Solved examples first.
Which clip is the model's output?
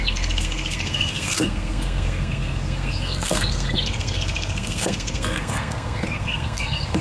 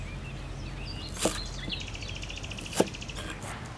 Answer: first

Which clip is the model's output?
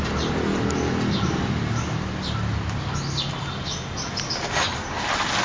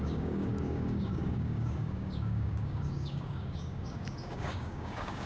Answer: second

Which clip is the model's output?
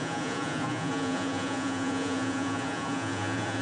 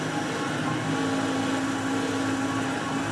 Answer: first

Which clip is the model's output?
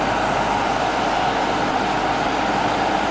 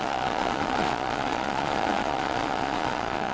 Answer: second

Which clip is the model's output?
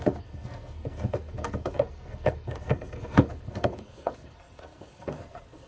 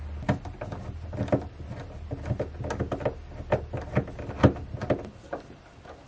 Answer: first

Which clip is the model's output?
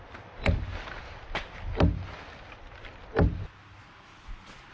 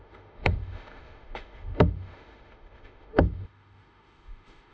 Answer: second